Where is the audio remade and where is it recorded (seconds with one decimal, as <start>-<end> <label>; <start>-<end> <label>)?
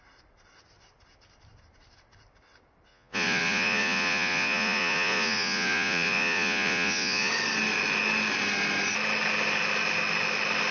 0.0-2.9 recorded; 2.9-7.3 remade; 7.3-10.7 recorded